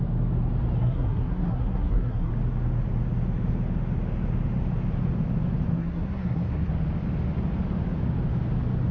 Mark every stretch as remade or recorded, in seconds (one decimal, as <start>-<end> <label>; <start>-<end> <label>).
0.0-0.8 recorded; 0.8-2.3 remade; 2.3-5.7 recorded; 5.7-6.7 remade; 6.7-8.9 recorded

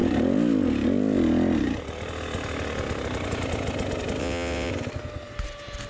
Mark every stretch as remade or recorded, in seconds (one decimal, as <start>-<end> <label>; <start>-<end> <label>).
0.0-4.2 recorded; 4.2-4.7 remade; 4.7-5.9 recorded

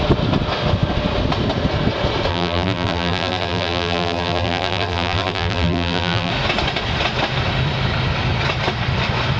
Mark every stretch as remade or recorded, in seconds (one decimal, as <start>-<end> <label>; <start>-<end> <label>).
0.0-2.3 recorded; 2.3-6.3 remade; 6.3-9.4 recorded

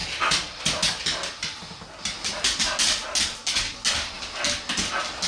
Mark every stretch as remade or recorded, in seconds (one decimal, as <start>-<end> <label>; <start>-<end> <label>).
0.0-5.3 recorded

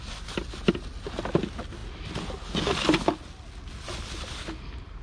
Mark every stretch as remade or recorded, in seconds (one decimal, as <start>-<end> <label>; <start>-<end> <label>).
0.0-5.0 recorded